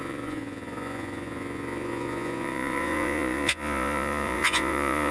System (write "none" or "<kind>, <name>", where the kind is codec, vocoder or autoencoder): vocoder, Vocos